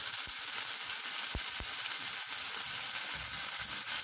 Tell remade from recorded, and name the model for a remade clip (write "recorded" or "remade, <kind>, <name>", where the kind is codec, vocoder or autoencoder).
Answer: recorded